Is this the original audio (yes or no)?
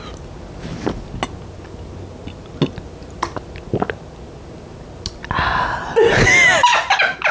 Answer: yes